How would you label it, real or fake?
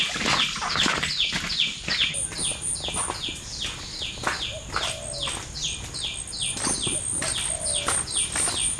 real